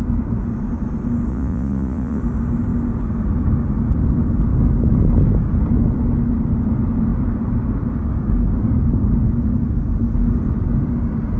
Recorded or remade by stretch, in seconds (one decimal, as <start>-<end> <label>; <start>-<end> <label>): 0.0-1.3 recorded; 1.3-2.2 remade; 2.2-11.4 recorded